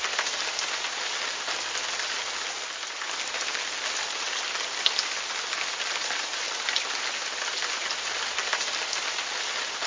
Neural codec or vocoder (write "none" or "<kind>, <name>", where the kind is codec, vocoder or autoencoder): none